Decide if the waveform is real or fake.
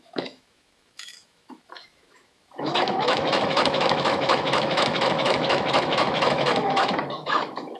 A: fake